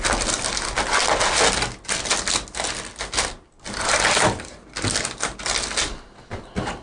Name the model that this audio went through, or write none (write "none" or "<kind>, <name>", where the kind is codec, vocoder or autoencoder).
none